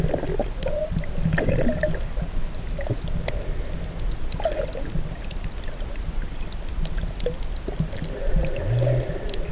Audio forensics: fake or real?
real